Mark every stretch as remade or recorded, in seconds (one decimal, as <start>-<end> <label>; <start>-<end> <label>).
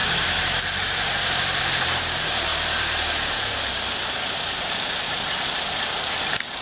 0.0-2.5 remade; 2.5-4.6 recorded; 4.6-6.6 remade